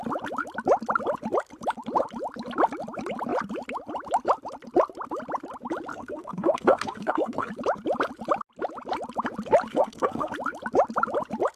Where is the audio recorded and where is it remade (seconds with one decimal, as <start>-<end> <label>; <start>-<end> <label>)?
0.0-5.9 recorded; 5.9-7.5 remade; 7.5-9.7 recorded; 9.7-10.3 remade; 10.3-11.6 recorded